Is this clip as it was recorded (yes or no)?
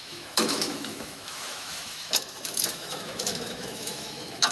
no